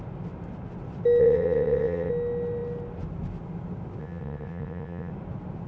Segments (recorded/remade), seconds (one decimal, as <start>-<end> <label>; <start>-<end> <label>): 0.0-1.2 recorded; 1.2-2.1 remade; 2.1-4.0 recorded; 4.0-5.1 remade; 5.1-5.7 recorded